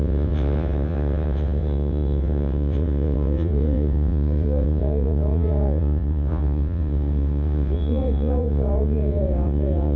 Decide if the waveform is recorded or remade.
remade